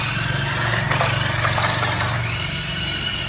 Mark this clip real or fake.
real